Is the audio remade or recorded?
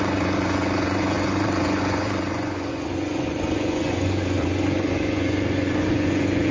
remade